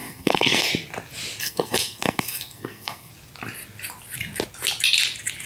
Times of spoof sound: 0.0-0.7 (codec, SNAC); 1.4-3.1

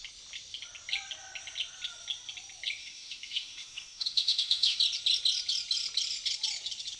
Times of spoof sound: 2.8-4.8 (autoencoder, DAC-VAE)